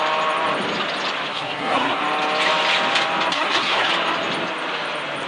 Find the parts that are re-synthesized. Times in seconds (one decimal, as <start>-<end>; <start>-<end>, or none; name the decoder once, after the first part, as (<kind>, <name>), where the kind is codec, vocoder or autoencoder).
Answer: 1.3-2.0 (codec, SNAC); 3.3-3.9